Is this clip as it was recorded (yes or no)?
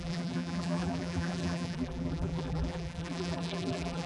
no